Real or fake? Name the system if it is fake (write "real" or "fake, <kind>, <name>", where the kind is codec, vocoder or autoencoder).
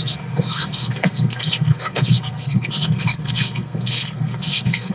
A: fake, codec, SNAC